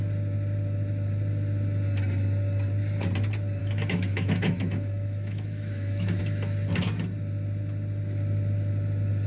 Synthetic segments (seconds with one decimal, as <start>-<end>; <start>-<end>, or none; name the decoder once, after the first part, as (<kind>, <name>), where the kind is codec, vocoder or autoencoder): 3.6-6.2 (autoencoder, DAC-VAE)